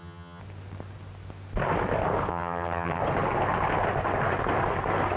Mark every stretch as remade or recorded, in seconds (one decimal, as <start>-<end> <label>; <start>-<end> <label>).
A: 0.0-0.4 remade; 0.4-2.3 recorded; 2.3-3.0 remade; 3.0-5.2 recorded